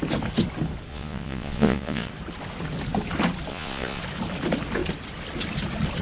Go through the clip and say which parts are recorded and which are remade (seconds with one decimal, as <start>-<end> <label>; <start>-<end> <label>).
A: 0.0-0.9 recorded; 0.9-2.1 remade; 2.1-3.5 recorded; 3.5-4.0 remade; 4.0-6.0 recorded